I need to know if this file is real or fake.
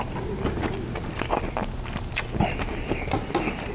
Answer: real